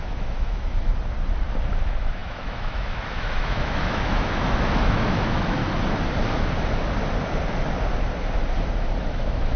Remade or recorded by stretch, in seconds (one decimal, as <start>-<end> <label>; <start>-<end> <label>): 0.0-0.9 remade; 0.9-1.7 recorded; 1.7-5.6 remade; 5.6-9.0 recorded; 9.0-9.6 remade